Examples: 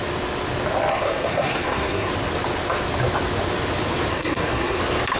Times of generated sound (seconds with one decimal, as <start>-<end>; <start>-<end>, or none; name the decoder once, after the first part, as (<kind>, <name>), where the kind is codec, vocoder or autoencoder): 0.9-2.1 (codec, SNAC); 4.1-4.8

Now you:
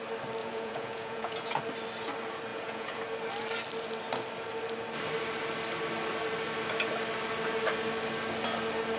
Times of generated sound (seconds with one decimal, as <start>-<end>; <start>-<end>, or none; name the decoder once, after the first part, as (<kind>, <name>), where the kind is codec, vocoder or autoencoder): 0.4-1.6 (vocoder, Vocos); 2.5-3.0

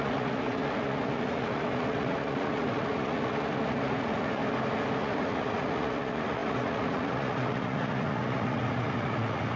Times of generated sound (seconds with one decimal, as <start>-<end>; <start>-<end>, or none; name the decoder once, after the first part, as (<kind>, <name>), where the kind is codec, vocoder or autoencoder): 0.0-4.4 (vocoder, Vocos); 5.0-9.6